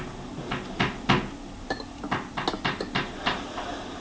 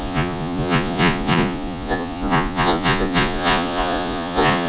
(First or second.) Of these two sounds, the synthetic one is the second